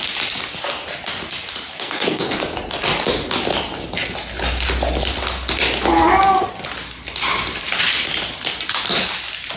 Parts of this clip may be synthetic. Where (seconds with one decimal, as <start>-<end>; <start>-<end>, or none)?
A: 1.7-2.4